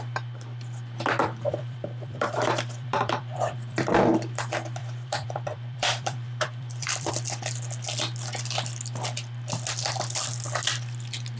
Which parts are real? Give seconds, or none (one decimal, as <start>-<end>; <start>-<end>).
0.0-1.2; 3.9-4.8; 7.1-11.4